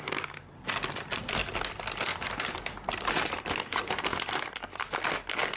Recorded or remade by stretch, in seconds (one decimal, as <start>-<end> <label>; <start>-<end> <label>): 0.0-2.1 recorded; 2.1-4.4 remade; 4.4-5.6 recorded